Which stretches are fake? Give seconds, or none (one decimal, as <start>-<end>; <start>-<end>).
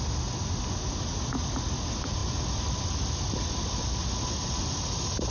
none